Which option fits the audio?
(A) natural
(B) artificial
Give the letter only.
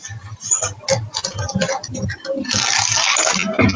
A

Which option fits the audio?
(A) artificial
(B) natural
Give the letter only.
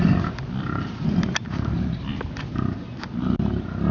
B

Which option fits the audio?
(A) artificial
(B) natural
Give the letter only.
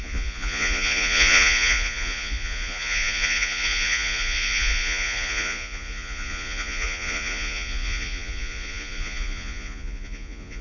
A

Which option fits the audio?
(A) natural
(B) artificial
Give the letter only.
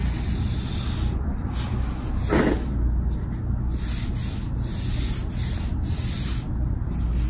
A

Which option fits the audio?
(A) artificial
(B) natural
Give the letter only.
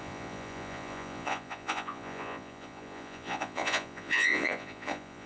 A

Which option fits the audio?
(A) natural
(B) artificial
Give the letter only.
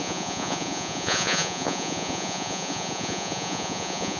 B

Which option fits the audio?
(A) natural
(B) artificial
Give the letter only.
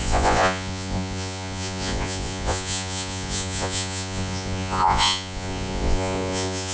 B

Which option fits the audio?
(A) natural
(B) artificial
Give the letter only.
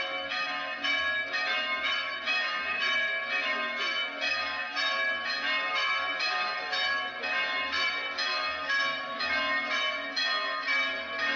A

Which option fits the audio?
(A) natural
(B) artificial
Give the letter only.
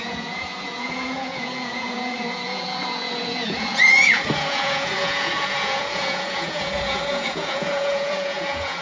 B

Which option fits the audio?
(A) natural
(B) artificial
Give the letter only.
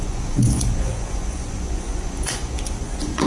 B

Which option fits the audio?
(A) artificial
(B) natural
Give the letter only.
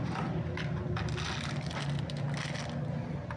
B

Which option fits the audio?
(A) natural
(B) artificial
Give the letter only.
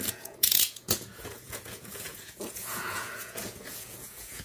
B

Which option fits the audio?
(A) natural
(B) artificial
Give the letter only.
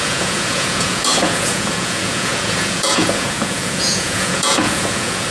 B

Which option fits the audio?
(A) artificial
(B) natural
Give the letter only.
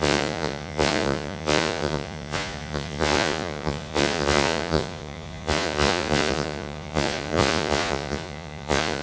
A